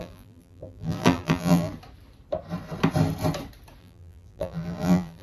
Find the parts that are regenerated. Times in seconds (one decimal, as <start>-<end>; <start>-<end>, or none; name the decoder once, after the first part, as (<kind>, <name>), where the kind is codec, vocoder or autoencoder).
0.0-1.7 (vocoder, BigVGAN v2); 3.8-5.2